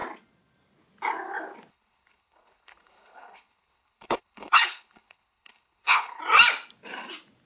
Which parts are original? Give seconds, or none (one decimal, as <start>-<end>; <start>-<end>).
0.0-1.7; 6.2-7.5